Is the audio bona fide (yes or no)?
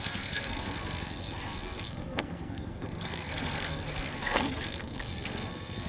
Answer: no